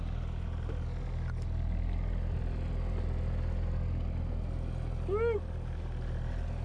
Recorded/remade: recorded